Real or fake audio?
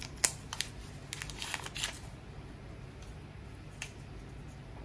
real